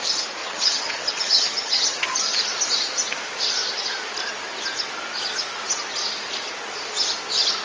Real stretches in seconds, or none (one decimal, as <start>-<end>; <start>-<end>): 0.0-0.4; 2.2-7.6